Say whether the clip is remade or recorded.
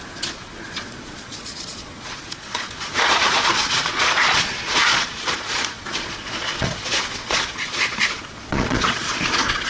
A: remade